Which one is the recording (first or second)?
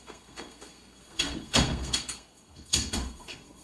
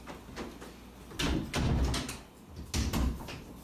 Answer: second